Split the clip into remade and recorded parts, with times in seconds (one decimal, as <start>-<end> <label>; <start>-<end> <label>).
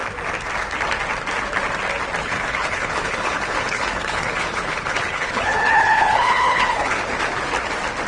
0.0-2.2 recorded; 2.2-7.1 remade; 7.1-8.1 recorded